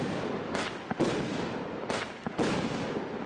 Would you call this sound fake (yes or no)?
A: no